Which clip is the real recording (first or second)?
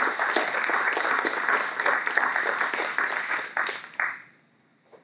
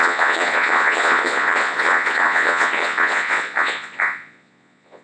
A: first